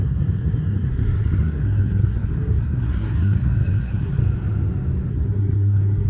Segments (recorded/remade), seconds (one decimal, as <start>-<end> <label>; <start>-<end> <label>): 0.0-4.2 remade; 4.2-5.1 recorded; 5.1-6.1 remade